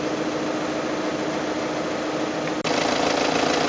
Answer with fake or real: real